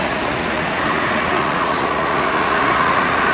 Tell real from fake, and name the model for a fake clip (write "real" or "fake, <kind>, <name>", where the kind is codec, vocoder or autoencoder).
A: fake, vocoder, Vocos